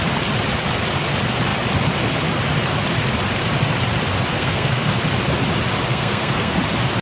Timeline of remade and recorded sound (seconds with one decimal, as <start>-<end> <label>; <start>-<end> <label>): 0.0-4.3 recorded; 4.3-4.9 remade; 4.9-5.9 recorded; 5.9-6.6 remade; 6.6-7.0 recorded